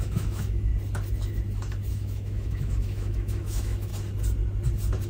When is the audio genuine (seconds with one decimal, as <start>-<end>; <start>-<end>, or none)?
0.7-1.9; 3.9-5.1